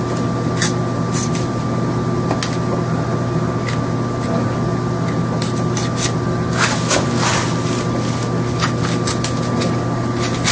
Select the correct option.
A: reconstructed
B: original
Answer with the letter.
B